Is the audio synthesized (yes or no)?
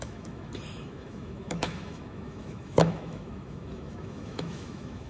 yes